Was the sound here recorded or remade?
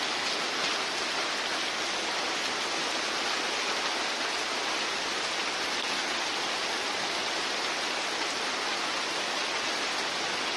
recorded